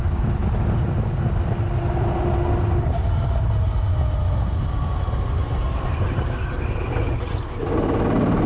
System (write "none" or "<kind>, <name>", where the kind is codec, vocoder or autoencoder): none